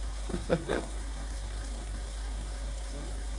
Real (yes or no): no